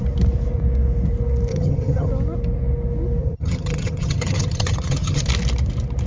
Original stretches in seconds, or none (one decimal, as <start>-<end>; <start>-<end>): 0.0-1.5; 2.1-3.2; 5.2-6.1